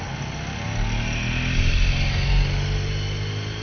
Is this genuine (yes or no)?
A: yes